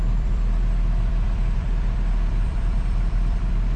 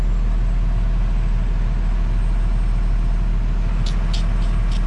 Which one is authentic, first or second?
second